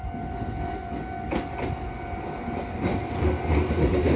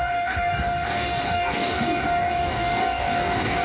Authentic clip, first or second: first